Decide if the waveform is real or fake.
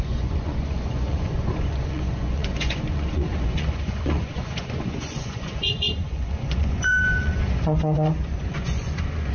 fake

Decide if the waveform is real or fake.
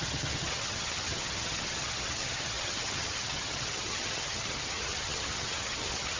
fake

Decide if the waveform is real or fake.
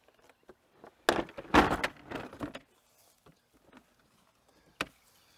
real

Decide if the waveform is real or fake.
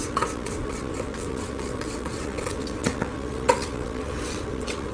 fake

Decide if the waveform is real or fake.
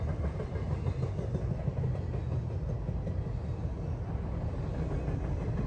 real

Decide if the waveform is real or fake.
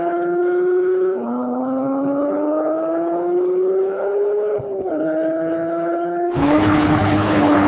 fake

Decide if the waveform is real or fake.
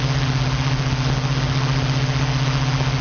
real